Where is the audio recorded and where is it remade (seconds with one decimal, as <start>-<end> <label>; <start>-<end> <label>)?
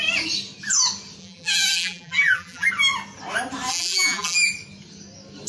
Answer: 0.0-1.2 recorded; 1.2-2.7 remade; 2.7-3.7 recorded; 3.7-4.5 remade; 4.5-5.5 recorded